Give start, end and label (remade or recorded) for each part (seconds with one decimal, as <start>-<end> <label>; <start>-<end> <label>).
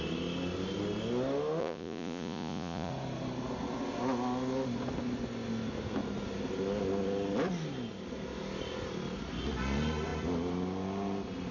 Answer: 0.0-1.6 recorded; 1.6-2.9 remade; 2.9-11.5 recorded